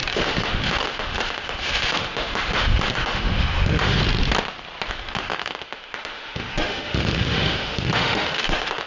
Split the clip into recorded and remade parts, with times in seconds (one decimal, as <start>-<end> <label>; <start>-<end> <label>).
0.0-4.0 remade; 4.0-4.9 recorded; 4.9-8.9 remade